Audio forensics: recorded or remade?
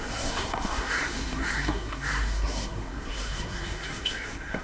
remade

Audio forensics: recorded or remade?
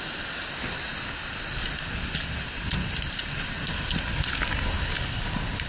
recorded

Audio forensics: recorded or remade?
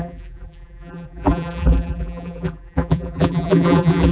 remade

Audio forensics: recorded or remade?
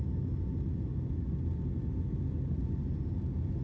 recorded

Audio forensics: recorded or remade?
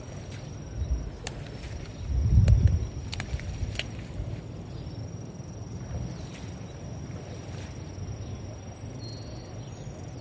recorded